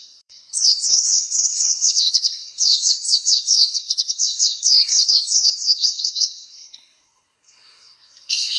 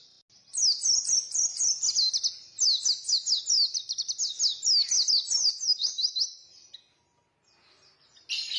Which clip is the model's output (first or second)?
first